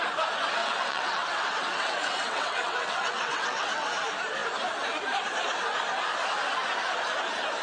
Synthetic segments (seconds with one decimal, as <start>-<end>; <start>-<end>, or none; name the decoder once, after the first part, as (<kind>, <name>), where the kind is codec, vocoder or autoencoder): 0.6-3.9 (vocoder, WaveNeXt)